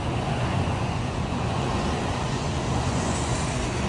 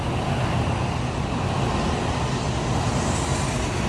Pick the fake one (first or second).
first